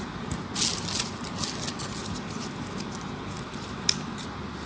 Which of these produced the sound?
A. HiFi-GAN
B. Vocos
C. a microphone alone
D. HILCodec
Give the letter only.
C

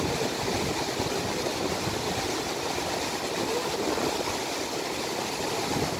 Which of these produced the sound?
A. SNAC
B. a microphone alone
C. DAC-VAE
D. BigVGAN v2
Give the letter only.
B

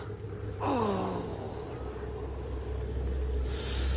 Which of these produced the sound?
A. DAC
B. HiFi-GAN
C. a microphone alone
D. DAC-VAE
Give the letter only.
C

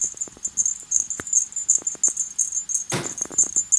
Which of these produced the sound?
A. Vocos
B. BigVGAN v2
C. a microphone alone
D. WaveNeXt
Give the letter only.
C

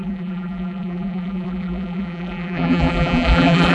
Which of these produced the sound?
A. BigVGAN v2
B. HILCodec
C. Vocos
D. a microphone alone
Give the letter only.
A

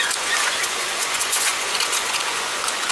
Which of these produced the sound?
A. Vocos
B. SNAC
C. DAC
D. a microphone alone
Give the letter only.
A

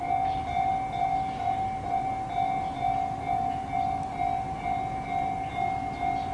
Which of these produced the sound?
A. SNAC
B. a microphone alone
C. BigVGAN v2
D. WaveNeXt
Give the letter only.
B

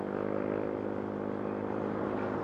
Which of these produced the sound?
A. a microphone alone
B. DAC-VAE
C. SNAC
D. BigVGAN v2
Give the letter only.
A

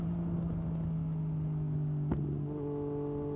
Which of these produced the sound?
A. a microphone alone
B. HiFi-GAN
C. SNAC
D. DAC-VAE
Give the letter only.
A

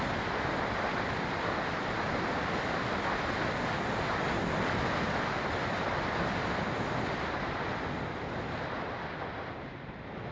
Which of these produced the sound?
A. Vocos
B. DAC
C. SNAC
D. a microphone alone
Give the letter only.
D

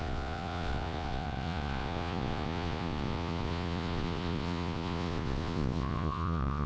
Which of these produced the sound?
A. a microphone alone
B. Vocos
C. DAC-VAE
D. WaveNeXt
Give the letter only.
B